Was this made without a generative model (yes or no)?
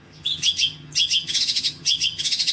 no